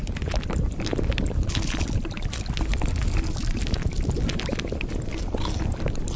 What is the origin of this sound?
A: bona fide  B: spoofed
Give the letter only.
A